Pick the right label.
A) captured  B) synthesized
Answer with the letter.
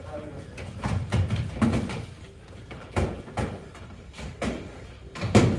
A